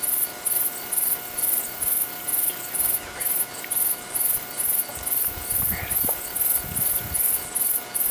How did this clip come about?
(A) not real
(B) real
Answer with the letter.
B